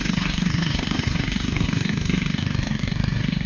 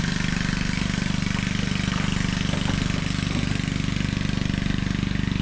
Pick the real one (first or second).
second